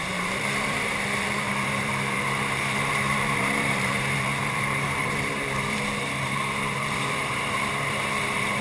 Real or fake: fake